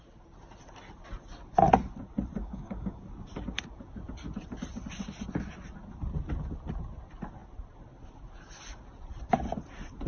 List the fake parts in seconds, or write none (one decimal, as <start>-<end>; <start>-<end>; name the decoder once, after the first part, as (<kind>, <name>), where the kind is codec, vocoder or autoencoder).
2.4-3.0 (codec, DAC)